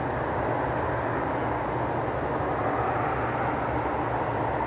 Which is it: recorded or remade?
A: recorded